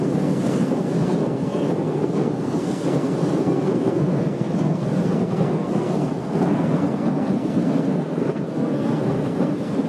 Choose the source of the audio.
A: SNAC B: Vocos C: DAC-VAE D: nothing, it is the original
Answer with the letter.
A